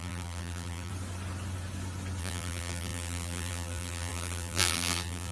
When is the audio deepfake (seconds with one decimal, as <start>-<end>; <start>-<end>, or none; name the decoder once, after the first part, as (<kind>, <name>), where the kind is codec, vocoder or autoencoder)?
0.0-0.9 (vocoder, BigVGAN v2); 2.2-5.3